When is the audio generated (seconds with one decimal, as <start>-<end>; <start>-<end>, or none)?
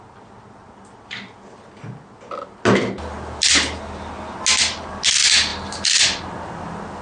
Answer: none